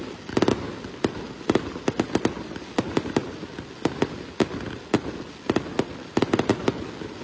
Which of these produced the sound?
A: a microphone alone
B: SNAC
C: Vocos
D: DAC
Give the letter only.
A